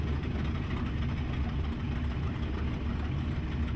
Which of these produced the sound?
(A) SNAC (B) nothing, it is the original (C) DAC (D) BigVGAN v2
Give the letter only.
B